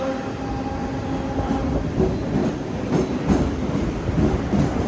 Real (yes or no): yes